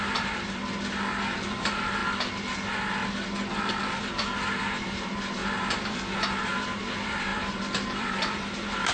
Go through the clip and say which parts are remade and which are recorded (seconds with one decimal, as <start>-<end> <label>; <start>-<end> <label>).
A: 0.0-0.6 remade; 0.6-1.5 recorded; 1.5-2.0 remade; 2.0-4.0 recorded; 4.0-8.9 remade